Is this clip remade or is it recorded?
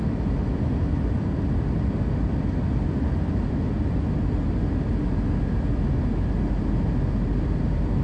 recorded